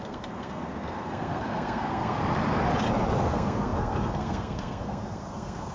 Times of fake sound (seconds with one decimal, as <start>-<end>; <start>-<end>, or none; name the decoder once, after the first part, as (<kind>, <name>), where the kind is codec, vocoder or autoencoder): 0.0-2.2 (codec, SNAC); 3.2-5.7

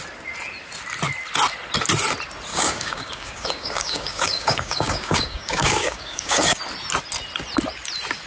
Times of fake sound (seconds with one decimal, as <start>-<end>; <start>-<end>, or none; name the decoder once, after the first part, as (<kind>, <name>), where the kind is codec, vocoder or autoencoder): 2.5-6.6 (codec, DAC)

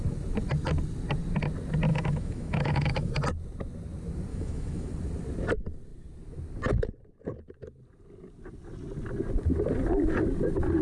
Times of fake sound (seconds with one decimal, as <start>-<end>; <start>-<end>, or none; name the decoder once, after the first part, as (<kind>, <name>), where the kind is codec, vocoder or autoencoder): 1.9-3.1 (autoencoder, DAC-VAE); 4.3-4.9